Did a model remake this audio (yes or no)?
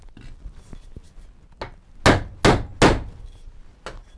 no